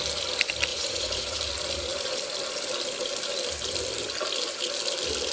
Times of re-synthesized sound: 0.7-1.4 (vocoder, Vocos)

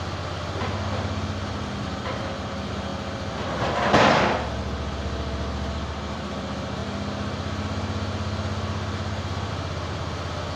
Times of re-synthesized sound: none

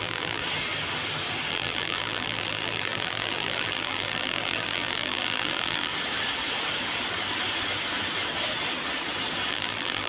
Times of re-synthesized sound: 0.0-0.4 (vocoder, BigVGAN v2); 1.5-5.9; 9.5-10.1

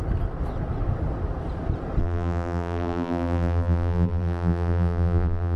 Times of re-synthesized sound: 2.0-5.6 (vocoder, BigVGAN v2)

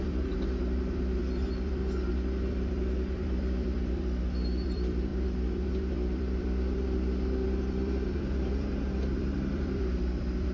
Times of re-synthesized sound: 0.0-1.8 (vocoder, BigVGAN v2); 2.5-10.5

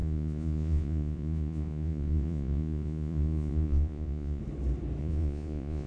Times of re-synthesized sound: 0.0-4.4 (vocoder, Vocos); 5.0-5.9

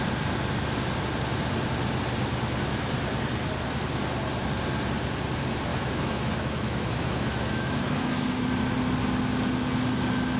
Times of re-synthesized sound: 5.7-8.1 (autoencoder, DAC-VAE)